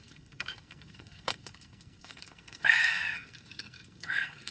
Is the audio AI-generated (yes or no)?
yes